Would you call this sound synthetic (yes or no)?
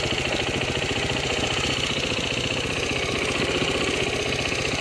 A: no